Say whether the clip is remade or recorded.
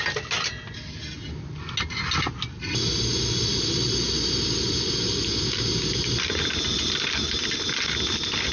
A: recorded